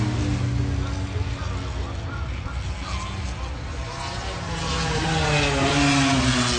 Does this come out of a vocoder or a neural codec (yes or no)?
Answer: no